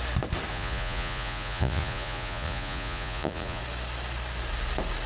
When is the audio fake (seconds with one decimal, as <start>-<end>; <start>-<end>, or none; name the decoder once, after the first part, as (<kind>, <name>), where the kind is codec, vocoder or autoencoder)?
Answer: 0.5-3.6 (vocoder, Vocos)